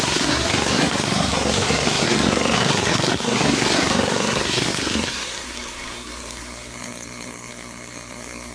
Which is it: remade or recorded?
remade